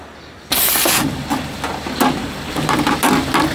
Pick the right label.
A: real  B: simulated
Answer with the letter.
A